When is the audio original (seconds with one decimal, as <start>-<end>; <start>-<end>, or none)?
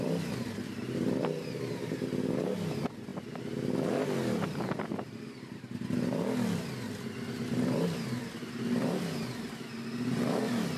0.0-10.8